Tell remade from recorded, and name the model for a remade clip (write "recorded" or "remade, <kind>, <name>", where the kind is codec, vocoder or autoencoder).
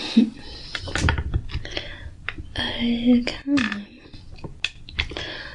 recorded